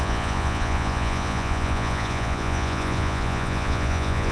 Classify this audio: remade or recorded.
remade